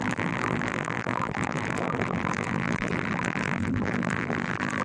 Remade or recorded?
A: remade